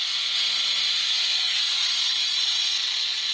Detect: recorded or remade remade